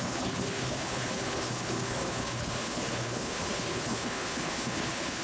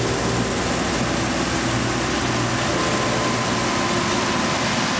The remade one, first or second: first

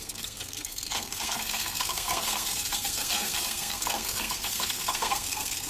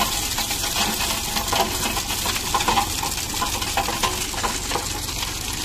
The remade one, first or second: first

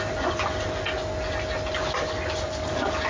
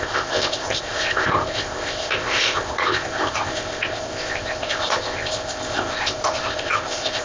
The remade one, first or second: second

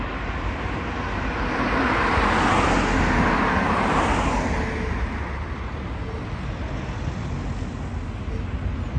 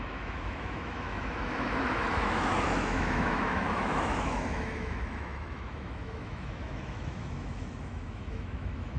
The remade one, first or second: second